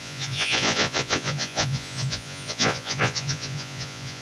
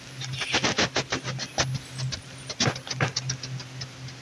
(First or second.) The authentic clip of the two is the second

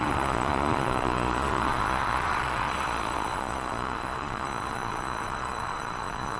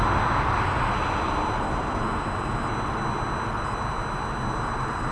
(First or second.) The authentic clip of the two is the second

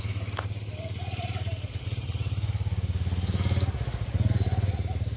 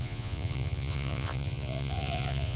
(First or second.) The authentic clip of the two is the first